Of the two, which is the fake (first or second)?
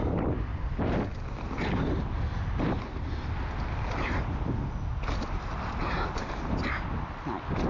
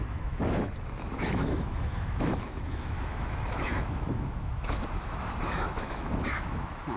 second